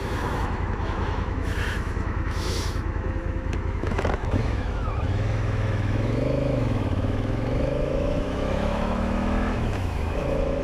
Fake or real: fake